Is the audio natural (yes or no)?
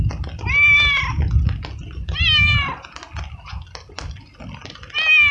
yes